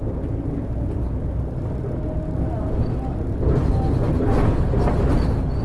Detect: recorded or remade recorded